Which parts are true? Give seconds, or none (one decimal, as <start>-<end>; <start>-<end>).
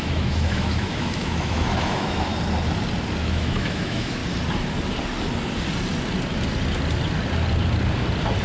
2.3-3.2; 4.2-8.4